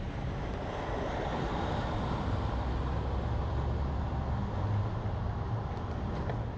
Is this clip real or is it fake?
real